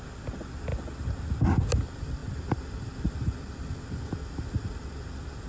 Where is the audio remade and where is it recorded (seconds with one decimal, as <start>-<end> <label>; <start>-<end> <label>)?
0.0-5.5 recorded